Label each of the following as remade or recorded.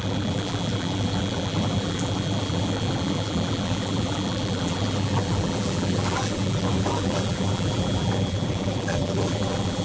remade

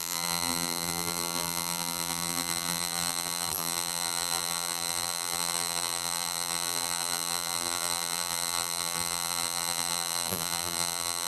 remade